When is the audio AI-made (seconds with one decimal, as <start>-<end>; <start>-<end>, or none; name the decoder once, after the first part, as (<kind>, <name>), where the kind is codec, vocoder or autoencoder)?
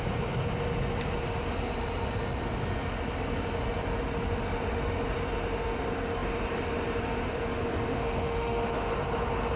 7.9-8.9 (autoencoder, DAC-VAE)